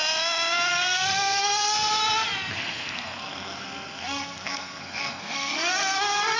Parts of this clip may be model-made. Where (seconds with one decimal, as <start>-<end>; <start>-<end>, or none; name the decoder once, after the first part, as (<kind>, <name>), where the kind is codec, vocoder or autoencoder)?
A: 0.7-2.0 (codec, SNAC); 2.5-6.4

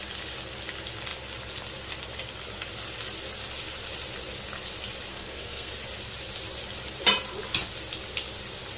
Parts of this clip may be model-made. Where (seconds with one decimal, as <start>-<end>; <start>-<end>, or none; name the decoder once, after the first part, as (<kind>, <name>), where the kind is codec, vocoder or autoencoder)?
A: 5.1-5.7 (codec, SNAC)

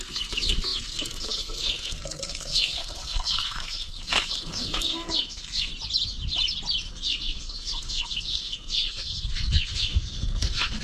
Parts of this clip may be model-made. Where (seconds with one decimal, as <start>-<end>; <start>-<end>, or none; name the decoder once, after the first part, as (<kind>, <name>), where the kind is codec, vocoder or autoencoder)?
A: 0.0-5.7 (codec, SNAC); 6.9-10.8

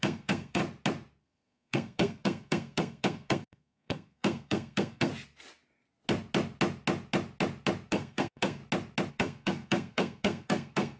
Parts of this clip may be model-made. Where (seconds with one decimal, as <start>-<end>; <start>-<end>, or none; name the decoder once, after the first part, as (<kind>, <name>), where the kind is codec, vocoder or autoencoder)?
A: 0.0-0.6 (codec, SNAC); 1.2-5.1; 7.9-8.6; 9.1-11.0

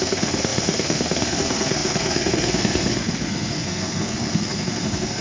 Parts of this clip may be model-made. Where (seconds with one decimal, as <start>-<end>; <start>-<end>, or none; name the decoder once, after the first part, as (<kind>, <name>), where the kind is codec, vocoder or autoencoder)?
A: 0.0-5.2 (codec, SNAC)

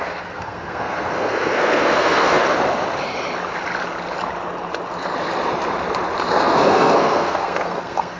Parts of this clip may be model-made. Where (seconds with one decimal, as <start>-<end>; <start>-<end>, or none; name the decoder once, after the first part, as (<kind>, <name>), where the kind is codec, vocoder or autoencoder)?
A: 0.0-2.4 (codec, SNAC); 6.3-8.2

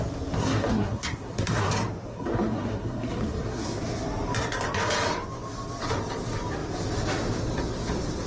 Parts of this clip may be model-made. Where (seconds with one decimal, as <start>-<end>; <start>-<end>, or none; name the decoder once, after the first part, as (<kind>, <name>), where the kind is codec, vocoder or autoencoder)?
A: 0.4-1.7 (codec, SNAC); 2.1-3.8